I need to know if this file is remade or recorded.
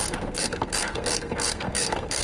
remade